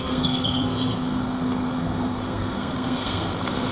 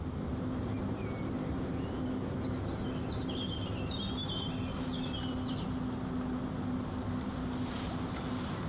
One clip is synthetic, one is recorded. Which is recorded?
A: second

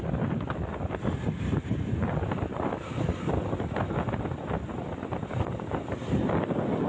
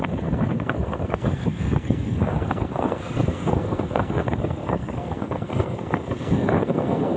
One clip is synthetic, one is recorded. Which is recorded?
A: first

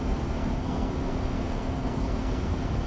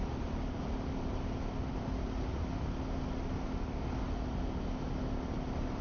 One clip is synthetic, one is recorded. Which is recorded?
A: second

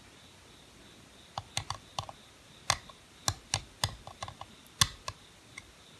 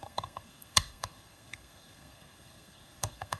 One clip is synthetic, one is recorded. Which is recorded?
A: first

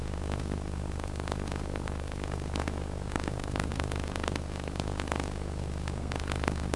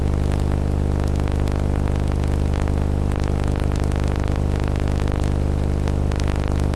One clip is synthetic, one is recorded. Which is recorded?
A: second